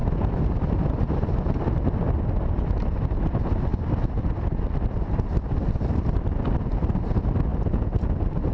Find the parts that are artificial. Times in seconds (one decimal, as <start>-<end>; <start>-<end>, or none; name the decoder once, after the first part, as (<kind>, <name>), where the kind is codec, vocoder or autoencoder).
3.7-6.6 (vocoder, BigVGAN v2); 7.5-8.5